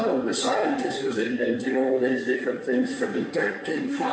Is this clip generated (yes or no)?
yes